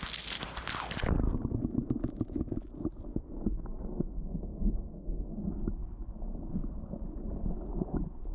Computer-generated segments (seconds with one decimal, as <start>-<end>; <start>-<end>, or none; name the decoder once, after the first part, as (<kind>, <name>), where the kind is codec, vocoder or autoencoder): 3.1-5.3 (codec, SNAC)